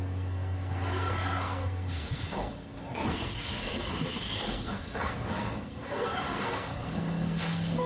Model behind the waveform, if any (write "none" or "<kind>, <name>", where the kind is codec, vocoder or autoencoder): codec, SNAC